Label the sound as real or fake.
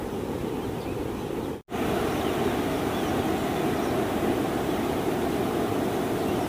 real